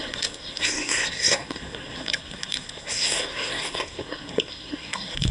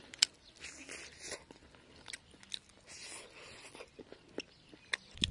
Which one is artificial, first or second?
first